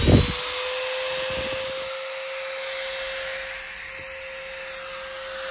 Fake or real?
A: real